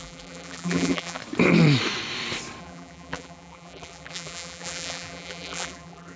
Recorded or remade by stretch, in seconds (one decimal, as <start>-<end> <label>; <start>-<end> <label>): 0.0-1.2 remade; 1.2-2.6 recorded; 2.6-6.2 remade